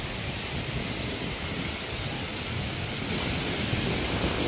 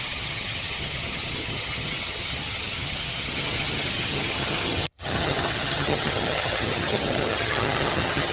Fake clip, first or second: second